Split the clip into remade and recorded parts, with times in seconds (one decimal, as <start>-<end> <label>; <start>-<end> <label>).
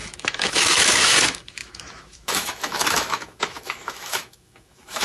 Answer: 0.0-5.0 remade